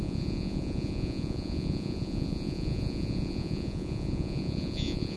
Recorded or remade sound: remade